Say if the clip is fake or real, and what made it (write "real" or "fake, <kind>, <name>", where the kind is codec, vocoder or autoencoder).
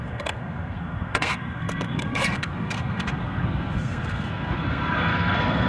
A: fake, codec, SNAC